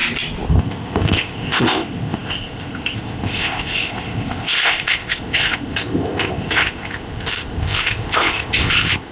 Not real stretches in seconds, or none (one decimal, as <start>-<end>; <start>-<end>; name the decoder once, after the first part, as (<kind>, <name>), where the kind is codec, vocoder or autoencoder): 0.5-9.1 (codec, ZipCodec)